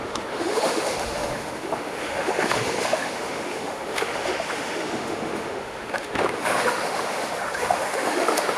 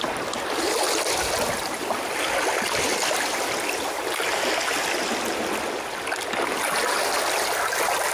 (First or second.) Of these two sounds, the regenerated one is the first